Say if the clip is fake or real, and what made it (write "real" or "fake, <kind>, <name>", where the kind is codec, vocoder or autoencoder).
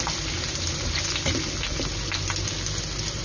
real